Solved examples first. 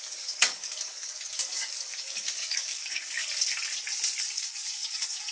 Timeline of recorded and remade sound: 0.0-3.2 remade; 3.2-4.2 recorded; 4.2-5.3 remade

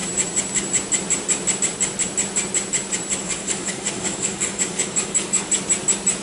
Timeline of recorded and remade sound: 0.0-3.2 recorded; 3.2-5.6 remade; 5.6-6.2 recorded

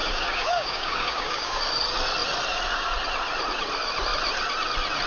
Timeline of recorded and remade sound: 0.0-1.6 remade; 1.6-5.1 recorded

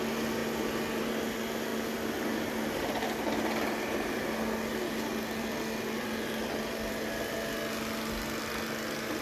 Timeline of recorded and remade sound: 0.0-9.2 recorded